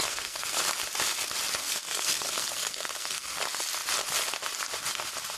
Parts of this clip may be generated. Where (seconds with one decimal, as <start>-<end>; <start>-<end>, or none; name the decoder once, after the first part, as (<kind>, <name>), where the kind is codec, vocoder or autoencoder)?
0.0-0.6 (codec, SNAC); 1.6-3.4